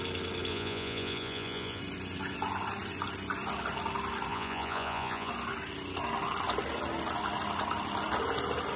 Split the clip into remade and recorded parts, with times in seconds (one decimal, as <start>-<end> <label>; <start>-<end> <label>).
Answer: 0.0-0.5 recorded; 0.5-1.8 remade; 1.8-4.3 recorded; 4.3-5.3 remade; 5.3-8.8 recorded